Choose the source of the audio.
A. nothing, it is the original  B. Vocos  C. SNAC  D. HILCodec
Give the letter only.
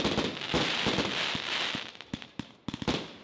A